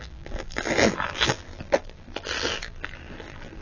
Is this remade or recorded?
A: remade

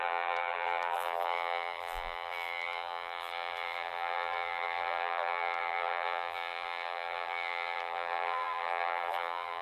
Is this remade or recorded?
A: remade